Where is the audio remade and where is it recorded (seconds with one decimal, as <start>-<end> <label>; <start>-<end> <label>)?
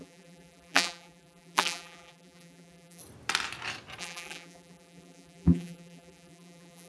0.0-3.0 remade; 3.0-4.0 recorded; 4.0-6.9 remade